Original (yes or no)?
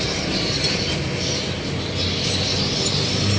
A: yes